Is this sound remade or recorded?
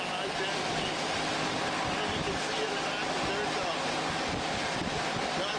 recorded